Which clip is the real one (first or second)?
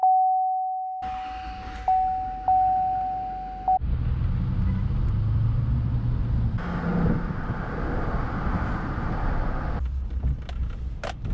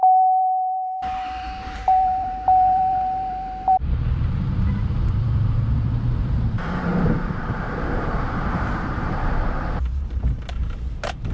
first